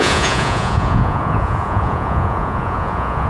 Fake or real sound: fake